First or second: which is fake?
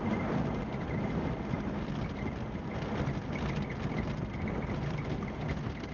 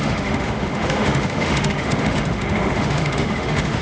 second